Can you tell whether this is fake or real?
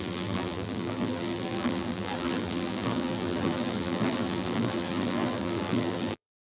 fake